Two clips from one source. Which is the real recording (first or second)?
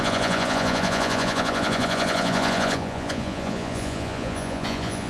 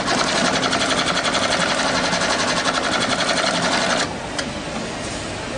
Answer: second